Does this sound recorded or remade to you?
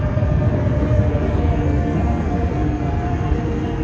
remade